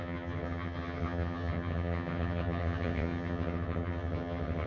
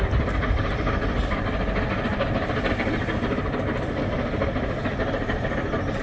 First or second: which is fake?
first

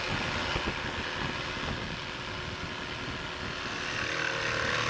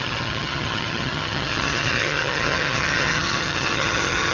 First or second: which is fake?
second